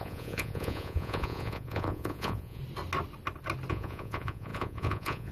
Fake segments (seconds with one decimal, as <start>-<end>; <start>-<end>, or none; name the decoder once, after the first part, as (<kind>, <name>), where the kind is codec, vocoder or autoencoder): 0.0-2.6 (vocoder, Vocos); 3.7-5.3